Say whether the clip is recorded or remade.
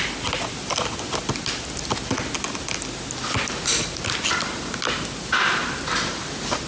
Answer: recorded